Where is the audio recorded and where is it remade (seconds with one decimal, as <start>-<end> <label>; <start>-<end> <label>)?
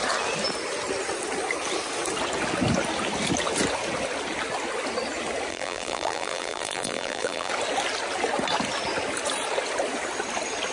0.0-5.5 recorded; 5.5-7.5 remade; 7.5-10.7 recorded